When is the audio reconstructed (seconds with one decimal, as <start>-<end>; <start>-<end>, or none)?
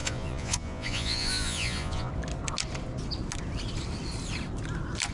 0.0-2.1